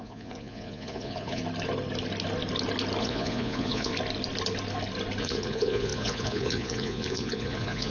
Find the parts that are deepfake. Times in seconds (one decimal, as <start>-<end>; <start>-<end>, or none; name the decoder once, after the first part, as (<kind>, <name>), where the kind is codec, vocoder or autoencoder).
0.0-1.4 (vocoder, Vocos); 3.0-3.9; 5.2-7.9

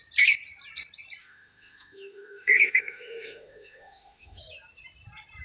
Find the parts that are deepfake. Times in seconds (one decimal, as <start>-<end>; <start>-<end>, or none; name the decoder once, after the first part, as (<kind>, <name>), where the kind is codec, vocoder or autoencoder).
1.2-4.4 (autoencoder, DAC-VAE)